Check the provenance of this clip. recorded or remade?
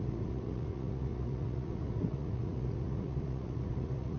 remade